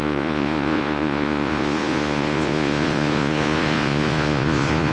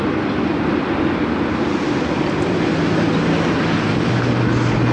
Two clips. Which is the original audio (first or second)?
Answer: second